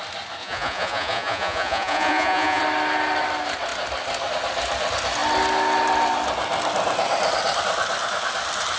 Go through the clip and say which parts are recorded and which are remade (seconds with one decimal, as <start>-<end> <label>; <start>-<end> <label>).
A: 0.0-0.4 recorded; 0.4-2.6 remade; 2.6-8.8 recorded

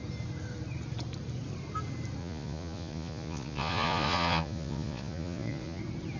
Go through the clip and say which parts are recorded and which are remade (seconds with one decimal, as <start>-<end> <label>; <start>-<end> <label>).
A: 0.0-2.2 recorded; 2.2-5.8 remade; 5.8-6.2 recorded

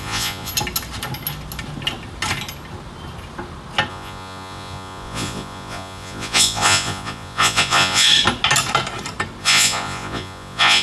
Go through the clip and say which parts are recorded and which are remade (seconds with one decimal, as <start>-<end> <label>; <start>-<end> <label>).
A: 0.0-0.5 remade; 0.5-3.9 recorded; 3.9-8.1 remade; 8.1-9.4 recorded; 9.4-10.8 remade

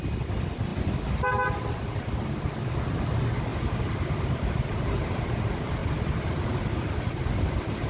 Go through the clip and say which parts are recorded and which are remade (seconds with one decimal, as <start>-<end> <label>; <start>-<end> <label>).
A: 0.0-7.9 recorded

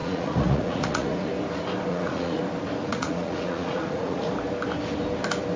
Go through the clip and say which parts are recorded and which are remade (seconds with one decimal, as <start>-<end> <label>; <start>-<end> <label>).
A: 0.0-1.3 remade; 1.3-1.9 recorded; 1.9-2.4 remade; 2.4-2.8 recorded; 2.8-4.3 remade; 4.3-5.6 recorded

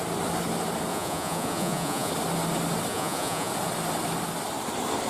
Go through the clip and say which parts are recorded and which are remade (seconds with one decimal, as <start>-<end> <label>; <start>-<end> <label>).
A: 0.0-0.9 recorded; 0.9-2.1 remade; 2.1-2.9 recorded; 2.9-3.5 remade; 3.5-5.1 recorded

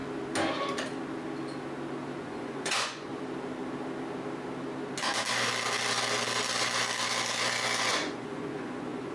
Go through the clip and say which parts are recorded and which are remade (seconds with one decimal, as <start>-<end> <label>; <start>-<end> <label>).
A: 0.0-2.2 recorded; 2.2-3.1 remade; 3.1-7.8 recorded; 7.8-9.1 remade

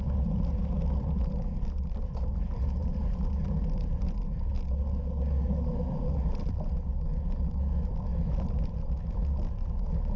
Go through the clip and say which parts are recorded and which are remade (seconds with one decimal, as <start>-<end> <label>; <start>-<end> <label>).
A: 0.0-10.2 recorded